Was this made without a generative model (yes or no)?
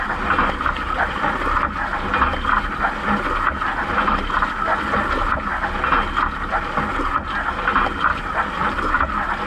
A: yes